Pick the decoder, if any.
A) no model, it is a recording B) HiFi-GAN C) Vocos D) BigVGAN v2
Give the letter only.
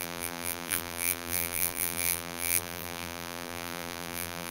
D